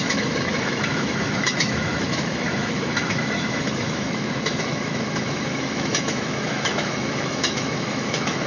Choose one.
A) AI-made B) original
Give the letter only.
A